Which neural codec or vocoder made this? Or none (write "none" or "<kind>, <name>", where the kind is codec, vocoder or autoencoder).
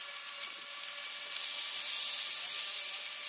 none